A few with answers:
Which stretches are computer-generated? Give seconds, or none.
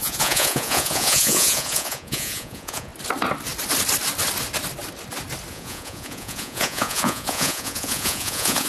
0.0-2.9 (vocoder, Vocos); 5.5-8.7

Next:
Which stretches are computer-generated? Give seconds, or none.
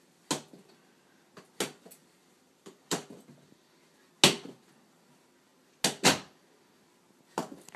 2.2-3.7 (vocoder, BigVGAN v2)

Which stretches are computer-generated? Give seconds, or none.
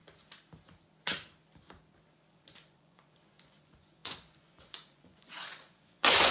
2.3-6.3 (vocoder, Vocos)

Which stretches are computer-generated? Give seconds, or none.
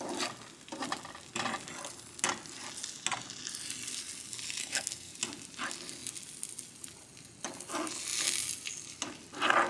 4.6-5.1 (codec, SNAC)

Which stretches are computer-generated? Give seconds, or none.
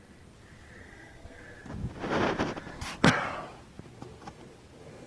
0.8-1.4 (codec, SNAC)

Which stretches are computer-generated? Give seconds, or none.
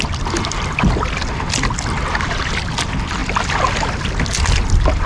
none